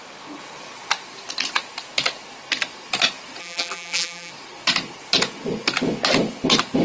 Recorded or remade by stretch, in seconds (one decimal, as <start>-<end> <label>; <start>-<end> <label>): 0.0-3.4 recorded; 3.4-4.3 remade; 4.3-6.8 recorded